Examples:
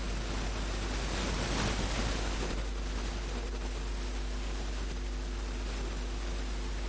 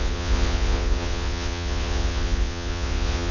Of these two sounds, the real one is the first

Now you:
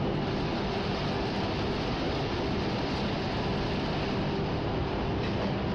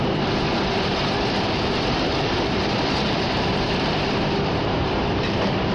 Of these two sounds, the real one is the first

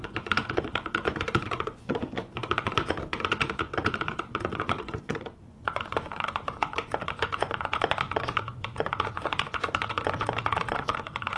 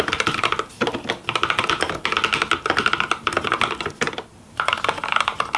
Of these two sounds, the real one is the second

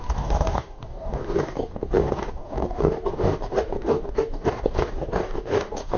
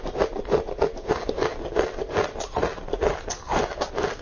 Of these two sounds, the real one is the second